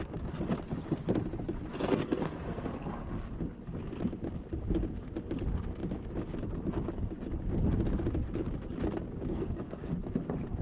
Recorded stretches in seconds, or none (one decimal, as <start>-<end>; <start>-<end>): 0.0-1.7; 2.8-9.3; 9.9-10.6